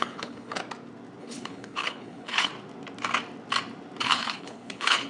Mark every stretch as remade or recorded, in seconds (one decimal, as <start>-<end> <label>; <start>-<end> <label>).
0.0-0.6 remade; 0.6-1.2 recorded; 1.2-2.5 remade; 2.5-4.0 recorded; 4.0-5.1 remade